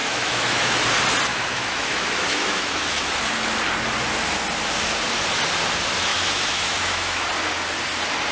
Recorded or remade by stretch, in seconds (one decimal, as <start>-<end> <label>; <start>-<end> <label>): 0.0-0.8 remade; 0.8-1.3 recorded; 1.3-3.1 remade; 3.1-6.1 recorded; 6.1-7.3 remade; 7.3-8.3 recorded

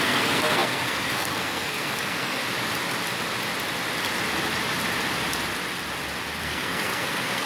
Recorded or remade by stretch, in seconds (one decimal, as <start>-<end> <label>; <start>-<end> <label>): 0.0-2.4 remade; 2.4-6.4 recorded; 6.4-7.5 remade